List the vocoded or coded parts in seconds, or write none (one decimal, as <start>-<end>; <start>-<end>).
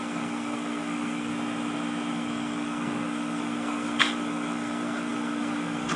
0.0-1.3; 2.1-6.0